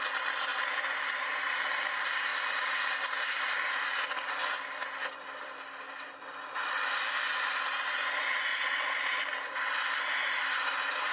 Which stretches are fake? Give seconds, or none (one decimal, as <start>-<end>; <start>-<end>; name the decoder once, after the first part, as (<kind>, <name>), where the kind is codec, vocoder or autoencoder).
8.5-9.1 (vocoder, Vocos)

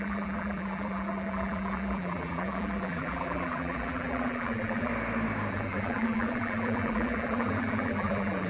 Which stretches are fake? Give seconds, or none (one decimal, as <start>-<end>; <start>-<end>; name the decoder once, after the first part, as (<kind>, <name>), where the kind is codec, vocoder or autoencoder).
0.0-4.9 (vocoder, BigVGAN v2); 5.5-8.5

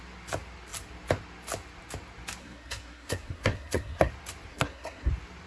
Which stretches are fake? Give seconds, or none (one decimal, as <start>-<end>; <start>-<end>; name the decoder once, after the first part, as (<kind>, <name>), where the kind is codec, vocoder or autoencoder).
2.4-4.1 (codec, SNAC); 4.5-5.1